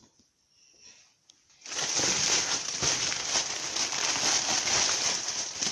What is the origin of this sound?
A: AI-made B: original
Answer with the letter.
B